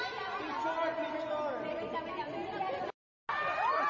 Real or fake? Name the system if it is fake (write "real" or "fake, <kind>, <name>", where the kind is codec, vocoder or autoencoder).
real